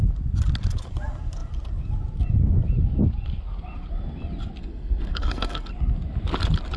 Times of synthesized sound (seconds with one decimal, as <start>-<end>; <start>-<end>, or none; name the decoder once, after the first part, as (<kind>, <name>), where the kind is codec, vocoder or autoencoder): 4.6-5.7 (codec, SNAC)